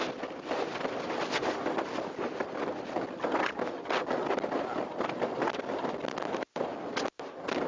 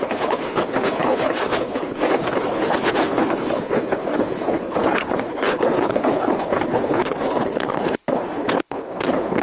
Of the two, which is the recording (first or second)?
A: first